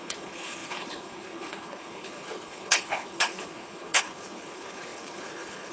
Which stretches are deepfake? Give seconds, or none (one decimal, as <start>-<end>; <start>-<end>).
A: 0.0-5.7